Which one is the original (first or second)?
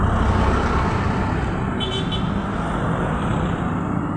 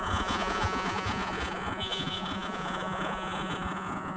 first